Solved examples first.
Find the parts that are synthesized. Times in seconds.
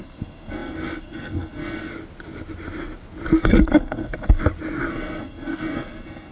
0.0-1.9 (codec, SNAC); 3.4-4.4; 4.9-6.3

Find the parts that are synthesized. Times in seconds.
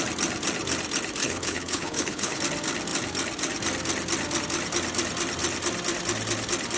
1.2-2.4 (codec, HILCodec)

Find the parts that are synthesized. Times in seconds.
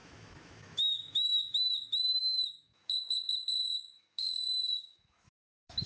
0.0-5.9 (autoencoder, DAC-VAE)